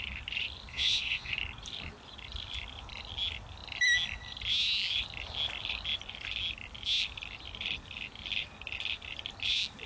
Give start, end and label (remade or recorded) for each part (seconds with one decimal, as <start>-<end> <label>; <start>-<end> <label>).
0.0-0.7 recorded; 0.7-1.3 remade; 1.3-9.9 recorded